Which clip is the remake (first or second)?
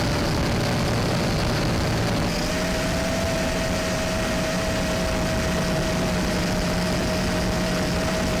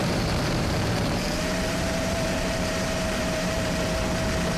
second